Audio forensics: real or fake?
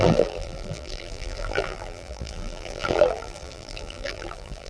fake